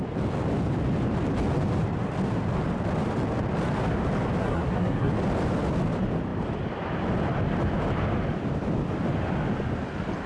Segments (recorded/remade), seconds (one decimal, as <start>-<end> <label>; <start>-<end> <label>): 0.0-4.4 recorded; 4.4-5.1 remade; 5.1-10.3 recorded